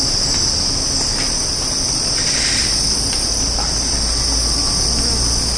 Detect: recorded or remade recorded